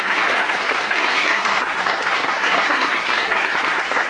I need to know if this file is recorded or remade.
remade